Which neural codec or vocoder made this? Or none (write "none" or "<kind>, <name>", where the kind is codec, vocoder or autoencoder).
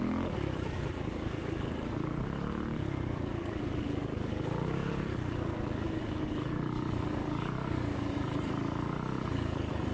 codec, DAC